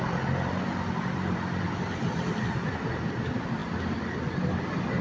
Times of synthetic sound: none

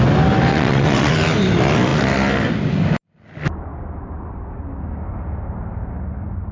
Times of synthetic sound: 0.5-1.1